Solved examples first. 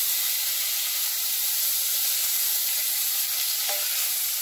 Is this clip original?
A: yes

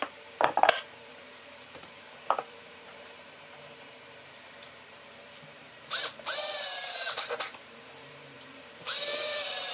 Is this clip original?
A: no